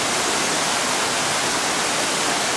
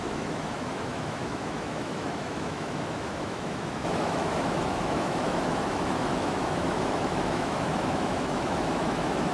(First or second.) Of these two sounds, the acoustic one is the first